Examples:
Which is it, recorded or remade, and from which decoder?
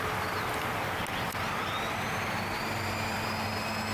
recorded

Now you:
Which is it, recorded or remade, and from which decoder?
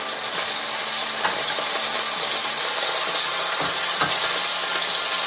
recorded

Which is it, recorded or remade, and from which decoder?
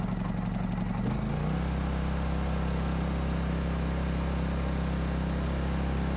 recorded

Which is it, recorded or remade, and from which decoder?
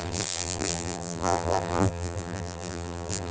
remade, vocoder, BigVGAN v2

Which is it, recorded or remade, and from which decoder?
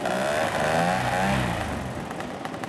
recorded